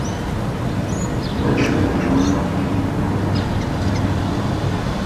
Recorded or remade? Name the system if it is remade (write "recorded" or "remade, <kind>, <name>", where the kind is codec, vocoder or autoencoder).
recorded